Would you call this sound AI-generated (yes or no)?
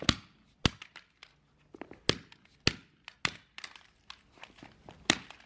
no